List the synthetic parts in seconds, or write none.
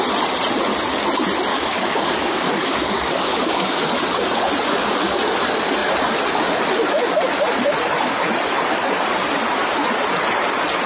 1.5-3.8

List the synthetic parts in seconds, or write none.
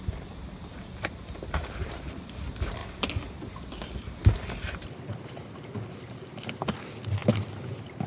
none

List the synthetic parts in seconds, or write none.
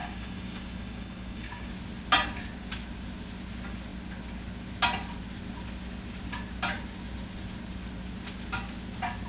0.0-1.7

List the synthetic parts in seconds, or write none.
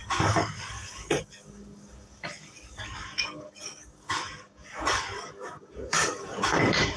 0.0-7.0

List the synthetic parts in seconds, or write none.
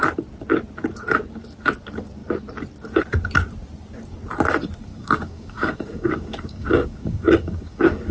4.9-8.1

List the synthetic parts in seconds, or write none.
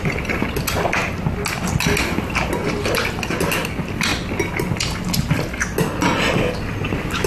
none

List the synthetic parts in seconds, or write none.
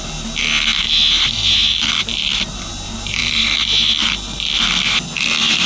none